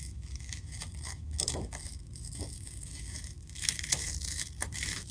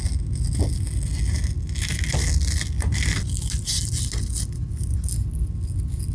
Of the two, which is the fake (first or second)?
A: first